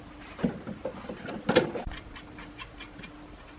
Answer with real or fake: real